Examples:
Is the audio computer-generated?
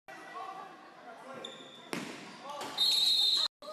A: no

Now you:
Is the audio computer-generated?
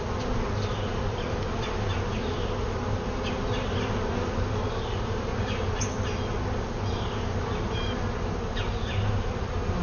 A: no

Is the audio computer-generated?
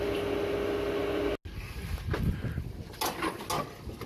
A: no